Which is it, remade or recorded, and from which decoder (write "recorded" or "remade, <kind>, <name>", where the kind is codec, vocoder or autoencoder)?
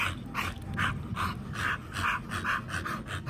recorded